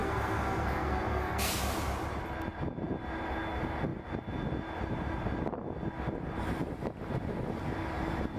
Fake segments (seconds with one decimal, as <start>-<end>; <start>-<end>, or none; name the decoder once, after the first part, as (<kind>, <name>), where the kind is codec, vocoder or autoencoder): 0.0-1.6 (codec, SNAC)